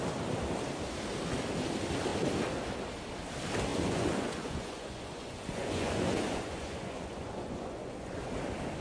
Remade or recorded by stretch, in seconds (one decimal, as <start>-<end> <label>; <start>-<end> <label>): 0.0-3.7 recorded; 3.7-8.2 remade; 8.2-8.8 recorded